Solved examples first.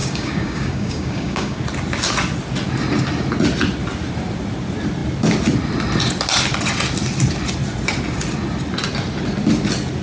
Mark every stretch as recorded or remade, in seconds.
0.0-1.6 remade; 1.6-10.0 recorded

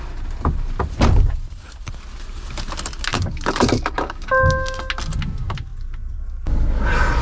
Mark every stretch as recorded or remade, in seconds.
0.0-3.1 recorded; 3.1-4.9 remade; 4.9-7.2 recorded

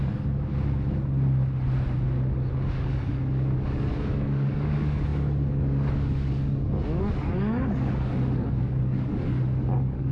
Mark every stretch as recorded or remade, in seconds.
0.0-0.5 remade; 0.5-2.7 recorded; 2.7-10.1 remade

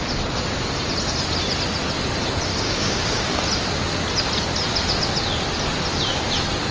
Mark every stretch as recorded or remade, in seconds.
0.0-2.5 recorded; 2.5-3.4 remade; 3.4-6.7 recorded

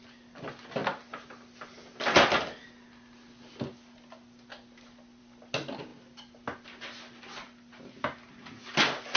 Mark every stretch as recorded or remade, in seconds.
0.0-9.2 recorded